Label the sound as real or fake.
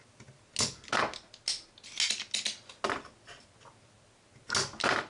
real